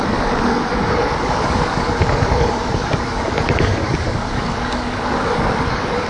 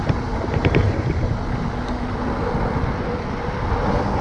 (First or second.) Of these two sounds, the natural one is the second